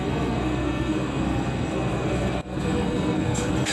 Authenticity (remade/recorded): remade